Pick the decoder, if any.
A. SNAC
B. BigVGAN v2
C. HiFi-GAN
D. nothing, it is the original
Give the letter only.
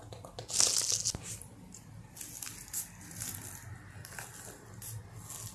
D